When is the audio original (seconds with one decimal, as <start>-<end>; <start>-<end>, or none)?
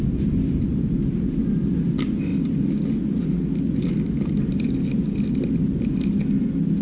0.0-6.8